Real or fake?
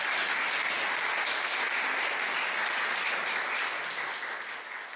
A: real